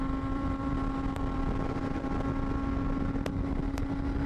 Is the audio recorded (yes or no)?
no